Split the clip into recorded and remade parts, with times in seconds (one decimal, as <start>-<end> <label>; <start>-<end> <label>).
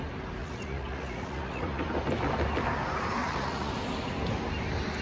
0.0-0.4 recorded; 0.4-1.8 remade; 1.8-3.2 recorded; 3.2-3.7 remade; 3.7-5.0 recorded